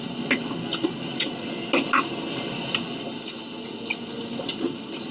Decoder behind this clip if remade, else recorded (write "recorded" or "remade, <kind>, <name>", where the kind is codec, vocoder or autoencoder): recorded